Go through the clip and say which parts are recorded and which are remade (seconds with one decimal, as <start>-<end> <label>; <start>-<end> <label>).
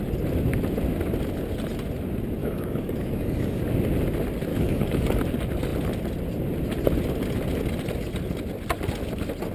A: 0.0-2.4 recorded; 2.4-3.6 remade; 3.6-4.5 recorded; 4.5-5.2 remade; 5.2-9.5 recorded